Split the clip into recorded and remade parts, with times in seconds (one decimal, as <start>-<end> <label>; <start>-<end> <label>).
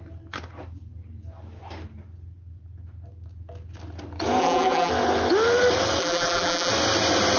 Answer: 0.0-4.4 recorded; 4.4-4.9 remade; 4.9-6.0 recorded; 6.0-6.7 remade; 6.7-7.4 recorded